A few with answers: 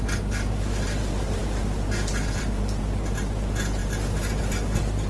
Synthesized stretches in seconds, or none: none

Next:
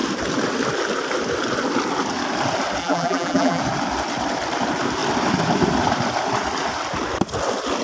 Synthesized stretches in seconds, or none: 2.8-3.6 (vocoder, BigVGAN v2)

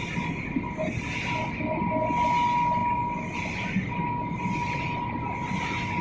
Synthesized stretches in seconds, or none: none

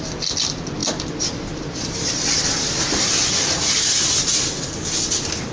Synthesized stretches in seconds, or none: 0.8-4.1 (vocoder, BigVGAN v2)

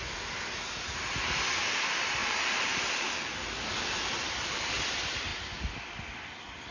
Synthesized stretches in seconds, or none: 2.2-4.8 (vocoder, BigVGAN v2)